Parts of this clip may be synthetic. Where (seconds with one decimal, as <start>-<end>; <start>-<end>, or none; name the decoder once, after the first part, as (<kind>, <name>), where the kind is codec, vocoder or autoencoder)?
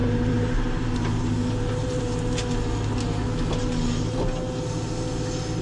0.0-2.0 (vocoder, BigVGAN v2)